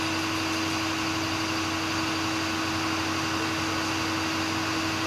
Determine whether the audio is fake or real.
real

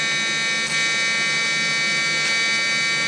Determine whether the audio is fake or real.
real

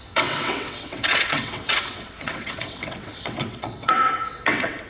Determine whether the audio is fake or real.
fake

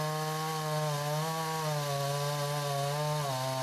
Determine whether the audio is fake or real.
real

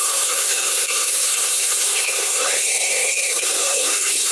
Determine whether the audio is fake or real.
fake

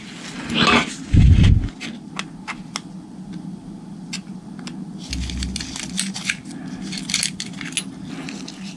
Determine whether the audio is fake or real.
real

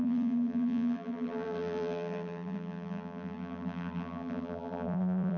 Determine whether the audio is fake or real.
fake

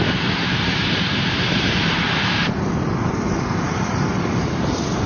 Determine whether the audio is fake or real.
fake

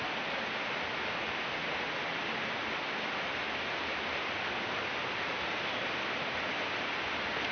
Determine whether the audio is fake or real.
real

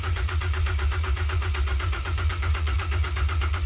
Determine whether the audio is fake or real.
fake